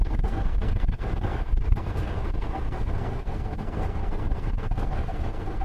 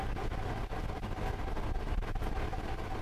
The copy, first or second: first